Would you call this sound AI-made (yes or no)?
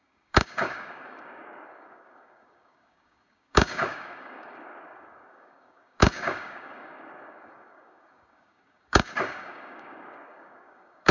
yes